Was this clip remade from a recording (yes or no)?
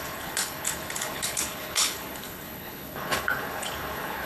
yes